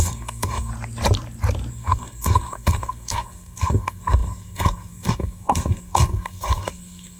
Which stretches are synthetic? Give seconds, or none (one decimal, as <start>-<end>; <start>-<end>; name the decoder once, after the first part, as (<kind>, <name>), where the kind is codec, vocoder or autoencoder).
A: 0.0-0.7 (codec, SNAC); 1.7-7.2